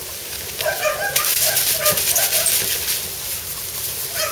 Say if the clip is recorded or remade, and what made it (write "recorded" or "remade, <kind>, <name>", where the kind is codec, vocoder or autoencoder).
recorded